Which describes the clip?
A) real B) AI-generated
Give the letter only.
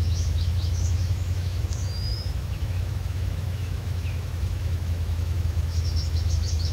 B